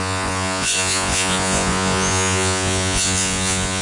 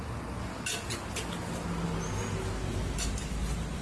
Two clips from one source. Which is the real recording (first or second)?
second